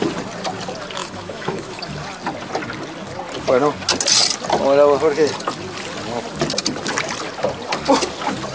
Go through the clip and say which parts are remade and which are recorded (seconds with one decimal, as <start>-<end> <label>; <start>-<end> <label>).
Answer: 0.0-1.0 recorded; 1.0-1.8 remade; 1.8-8.5 recorded